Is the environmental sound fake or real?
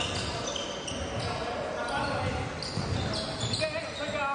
real